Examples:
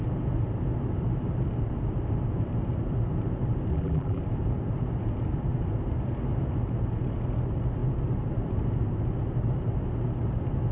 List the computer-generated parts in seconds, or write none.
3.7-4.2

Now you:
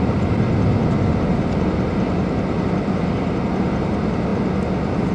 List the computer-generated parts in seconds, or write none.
0.8-3.9